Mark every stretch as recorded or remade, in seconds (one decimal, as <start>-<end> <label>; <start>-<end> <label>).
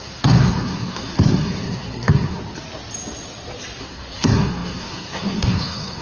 0.0-2.4 remade; 2.4-3.8 recorded; 3.8-6.0 remade